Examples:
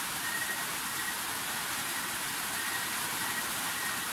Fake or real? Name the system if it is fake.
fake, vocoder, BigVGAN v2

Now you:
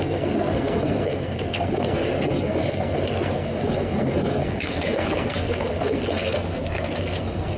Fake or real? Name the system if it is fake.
fake, codec, SNAC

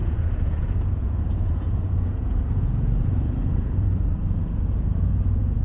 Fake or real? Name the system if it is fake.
fake, vocoder, Vocos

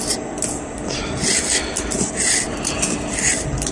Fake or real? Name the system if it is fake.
real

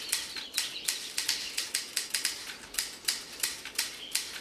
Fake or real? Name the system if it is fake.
real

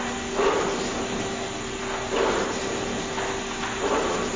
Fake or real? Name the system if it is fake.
real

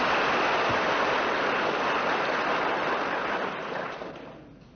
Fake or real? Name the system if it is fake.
real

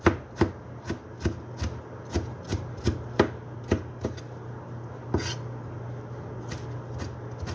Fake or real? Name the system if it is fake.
real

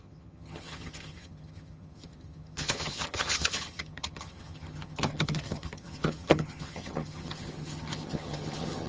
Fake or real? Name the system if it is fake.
fake, vocoder, HiFi-GAN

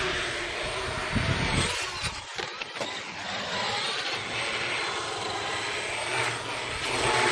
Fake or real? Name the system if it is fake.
real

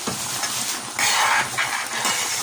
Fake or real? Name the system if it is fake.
real